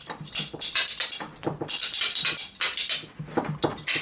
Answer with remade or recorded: recorded